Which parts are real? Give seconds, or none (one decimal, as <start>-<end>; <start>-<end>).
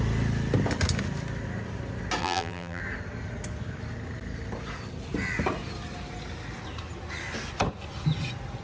0.0-2.2; 2.8-8.6